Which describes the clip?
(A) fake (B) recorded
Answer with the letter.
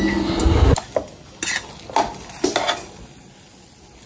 B